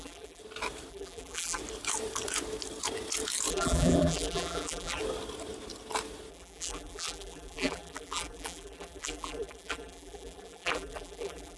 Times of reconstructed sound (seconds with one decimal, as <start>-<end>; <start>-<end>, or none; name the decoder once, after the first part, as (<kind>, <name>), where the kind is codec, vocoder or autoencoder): 0.0-0.4 (vocoder, BigVGAN v2); 0.9-1.6; 3.5-5.0; 6.3-11.6